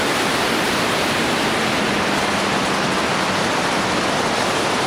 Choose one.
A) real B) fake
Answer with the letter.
A